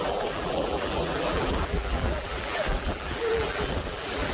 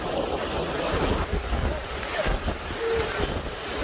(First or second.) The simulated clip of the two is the first